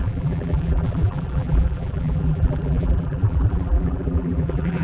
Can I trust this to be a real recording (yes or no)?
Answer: no